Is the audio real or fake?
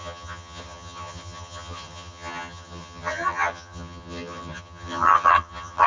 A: fake